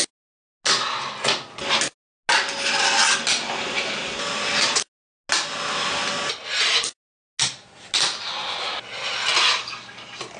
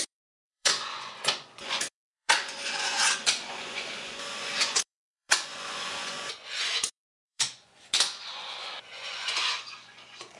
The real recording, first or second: first